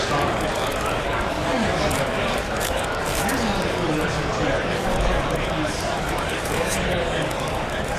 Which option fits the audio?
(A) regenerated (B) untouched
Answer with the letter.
A